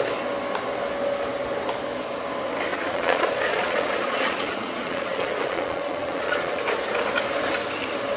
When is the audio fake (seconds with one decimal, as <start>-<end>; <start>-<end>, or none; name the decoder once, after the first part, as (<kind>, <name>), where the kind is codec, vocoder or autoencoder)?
2.7-6.6 (vocoder, Vocos)